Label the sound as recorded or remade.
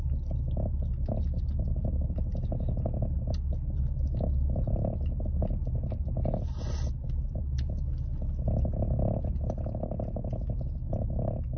recorded